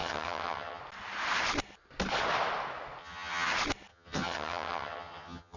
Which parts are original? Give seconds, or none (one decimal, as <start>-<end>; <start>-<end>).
0.8-3.0; 3.5-3.9